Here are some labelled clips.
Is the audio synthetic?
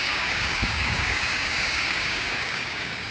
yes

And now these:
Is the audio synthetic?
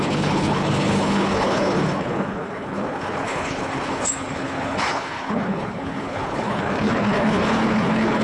yes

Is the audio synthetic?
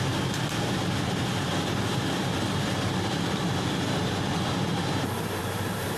yes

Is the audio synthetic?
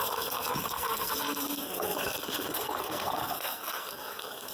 yes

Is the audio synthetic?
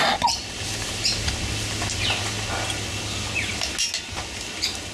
no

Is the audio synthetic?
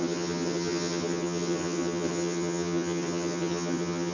yes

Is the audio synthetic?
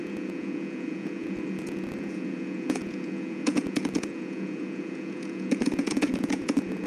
yes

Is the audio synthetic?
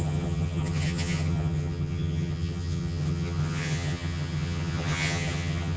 yes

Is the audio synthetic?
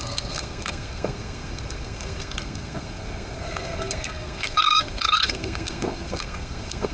yes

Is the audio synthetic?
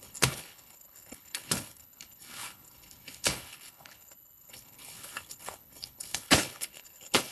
yes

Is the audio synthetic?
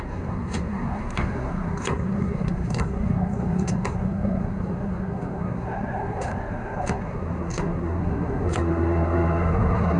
yes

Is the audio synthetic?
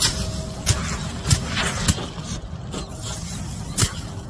no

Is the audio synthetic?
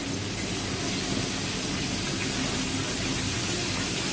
no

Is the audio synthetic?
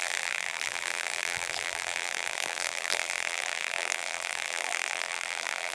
yes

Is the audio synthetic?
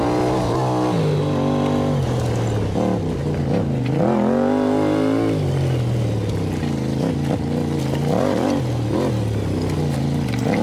no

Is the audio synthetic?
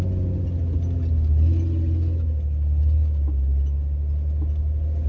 no